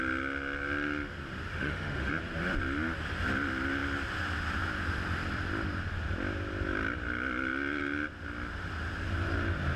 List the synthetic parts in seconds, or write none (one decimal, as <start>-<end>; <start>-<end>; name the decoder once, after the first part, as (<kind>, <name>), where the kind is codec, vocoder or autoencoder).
1.5-2.1 (autoencoder, DAC-VAE)